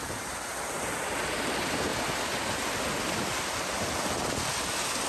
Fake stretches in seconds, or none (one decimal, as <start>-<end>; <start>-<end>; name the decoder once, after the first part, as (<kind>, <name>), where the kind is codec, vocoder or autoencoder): none